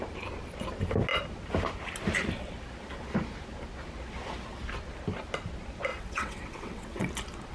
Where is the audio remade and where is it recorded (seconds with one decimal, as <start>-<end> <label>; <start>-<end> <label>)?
0.0-5.9 recorded; 5.9-7.1 remade; 7.1-7.5 recorded